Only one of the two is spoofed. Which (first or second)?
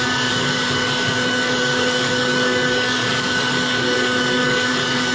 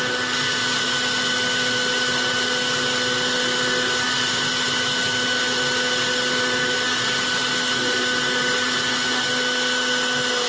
first